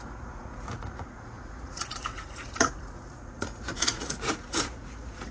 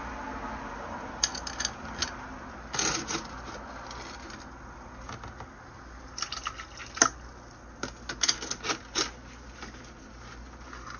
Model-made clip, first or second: first